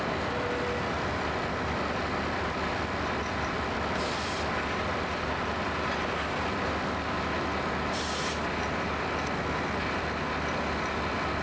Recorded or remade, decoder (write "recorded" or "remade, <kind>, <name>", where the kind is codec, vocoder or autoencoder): recorded